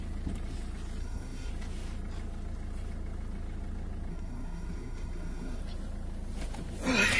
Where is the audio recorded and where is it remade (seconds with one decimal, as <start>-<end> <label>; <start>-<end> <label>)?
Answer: 0.0-1.0 recorded; 1.0-1.5 remade; 1.5-4.1 recorded; 4.1-5.6 remade; 5.6-7.2 recorded